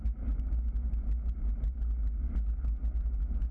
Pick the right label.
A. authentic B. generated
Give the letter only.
A